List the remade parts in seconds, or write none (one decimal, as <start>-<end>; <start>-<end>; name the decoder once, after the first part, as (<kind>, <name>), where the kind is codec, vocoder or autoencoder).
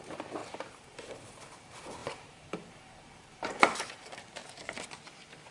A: 0.0-4.4 (vocoder, BigVGAN v2)